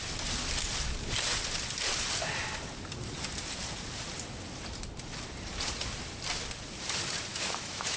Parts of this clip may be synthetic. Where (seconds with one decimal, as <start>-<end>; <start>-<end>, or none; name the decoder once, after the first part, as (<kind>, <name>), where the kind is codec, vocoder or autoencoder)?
7.3-8.0 (autoencoder, DAC-VAE)